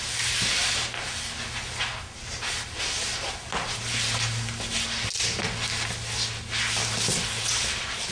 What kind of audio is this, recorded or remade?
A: recorded